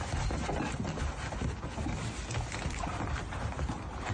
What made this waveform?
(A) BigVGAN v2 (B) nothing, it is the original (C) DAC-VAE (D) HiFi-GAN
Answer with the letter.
B